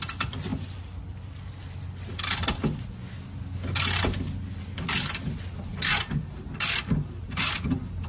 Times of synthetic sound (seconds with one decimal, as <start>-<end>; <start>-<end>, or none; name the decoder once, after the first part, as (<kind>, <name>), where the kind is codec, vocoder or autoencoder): none